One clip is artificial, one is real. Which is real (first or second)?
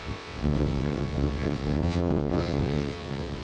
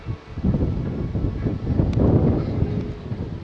second